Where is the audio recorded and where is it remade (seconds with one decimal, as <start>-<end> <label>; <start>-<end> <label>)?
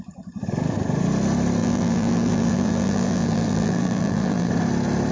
0.0-1.6 recorded; 1.6-4.5 remade; 4.5-5.1 recorded